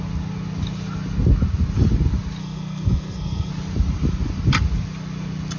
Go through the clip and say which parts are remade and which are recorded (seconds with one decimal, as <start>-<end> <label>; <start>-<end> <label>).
0.0-2.4 recorded; 2.4-3.5 remade; 3.5-5.6 recorded